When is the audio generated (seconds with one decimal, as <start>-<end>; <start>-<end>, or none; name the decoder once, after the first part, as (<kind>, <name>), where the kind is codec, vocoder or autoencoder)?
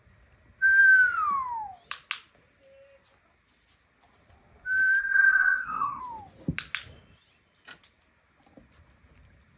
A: 5.0-6.0 (codec, SNAC)